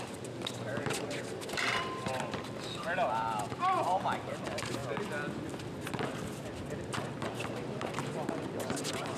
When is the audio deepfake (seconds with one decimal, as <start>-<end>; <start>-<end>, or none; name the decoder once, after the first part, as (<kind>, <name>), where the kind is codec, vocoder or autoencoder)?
0.0-0.7 (vocoder, BigVGAN v2); 1.2-4.8; 7.7-9.2